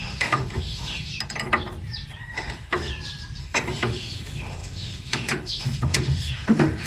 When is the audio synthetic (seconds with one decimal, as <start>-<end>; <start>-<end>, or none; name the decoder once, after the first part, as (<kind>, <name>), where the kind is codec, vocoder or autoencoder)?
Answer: 0.0-1.1 (autoencoder, DAC-VAE); 2.2-2.9; 3.4-6.9